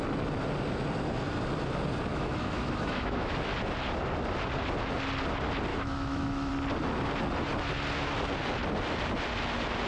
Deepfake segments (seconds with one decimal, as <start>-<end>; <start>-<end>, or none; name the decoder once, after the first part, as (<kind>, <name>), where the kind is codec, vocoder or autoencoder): 2.1-3.5 (autoencoder, DAC-VAE); 5.7-6.5